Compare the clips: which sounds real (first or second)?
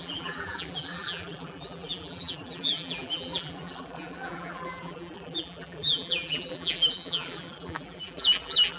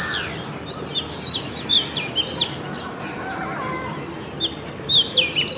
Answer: second